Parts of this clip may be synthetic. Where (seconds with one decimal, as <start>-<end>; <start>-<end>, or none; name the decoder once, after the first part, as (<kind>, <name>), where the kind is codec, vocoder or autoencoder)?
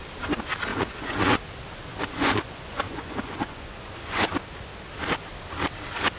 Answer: 0.7-1.4 (vocoder, Vocos); 1.9-4.3